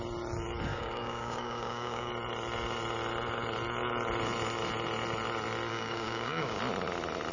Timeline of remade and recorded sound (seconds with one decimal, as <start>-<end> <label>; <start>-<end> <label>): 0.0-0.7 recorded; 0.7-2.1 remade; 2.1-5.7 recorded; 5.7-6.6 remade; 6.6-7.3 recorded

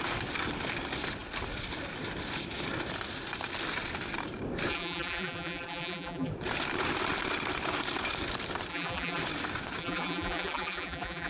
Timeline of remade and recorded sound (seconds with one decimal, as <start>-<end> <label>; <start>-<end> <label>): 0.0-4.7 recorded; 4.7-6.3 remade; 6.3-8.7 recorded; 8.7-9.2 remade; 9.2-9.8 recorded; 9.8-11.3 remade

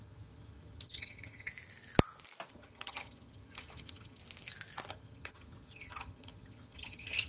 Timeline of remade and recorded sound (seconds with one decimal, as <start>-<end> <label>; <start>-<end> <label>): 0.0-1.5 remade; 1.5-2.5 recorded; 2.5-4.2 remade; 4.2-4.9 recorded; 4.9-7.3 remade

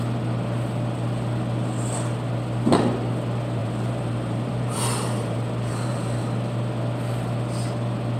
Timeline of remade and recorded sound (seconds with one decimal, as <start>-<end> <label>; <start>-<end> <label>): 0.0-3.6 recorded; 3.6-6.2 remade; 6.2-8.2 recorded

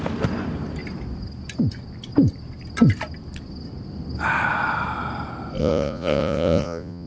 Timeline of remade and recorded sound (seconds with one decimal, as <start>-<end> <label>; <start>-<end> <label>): 0.0-5.6 recorded; 5.6-7.1 remade

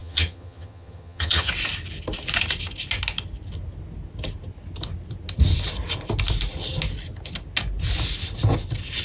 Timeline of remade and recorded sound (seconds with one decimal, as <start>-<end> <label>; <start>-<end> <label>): 0.0-1.5 remade; 1.5-9.0 recorded

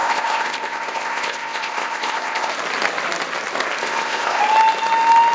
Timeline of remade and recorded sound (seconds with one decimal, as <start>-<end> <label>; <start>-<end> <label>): 0.0-2.5 remade; 2.5-3.8 recorded; 3.8-4.4 remade; 4.4-5.3 recorded